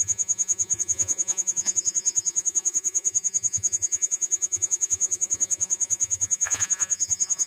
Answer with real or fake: fake